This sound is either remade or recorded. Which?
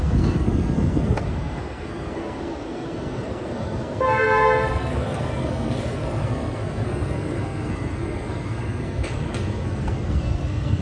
remade